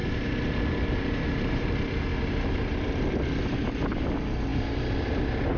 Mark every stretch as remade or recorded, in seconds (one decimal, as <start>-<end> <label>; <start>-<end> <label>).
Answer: 0.0-1.7 remade; 1.7-5.6 recorded